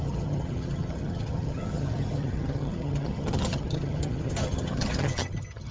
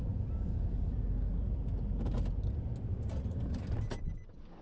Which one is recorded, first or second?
second